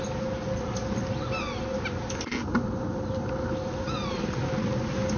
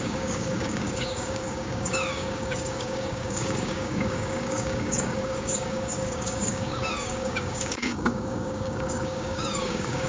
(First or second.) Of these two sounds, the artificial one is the second